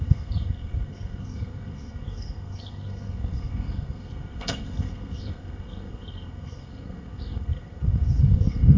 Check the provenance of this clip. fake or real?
fake